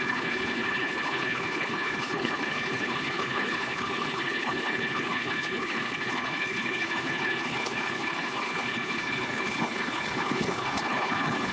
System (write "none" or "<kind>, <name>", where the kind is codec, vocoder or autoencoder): codec, HILCodec